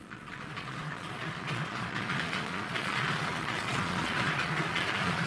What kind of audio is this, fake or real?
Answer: fake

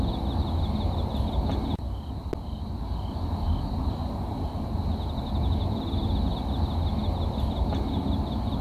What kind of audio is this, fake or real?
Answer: real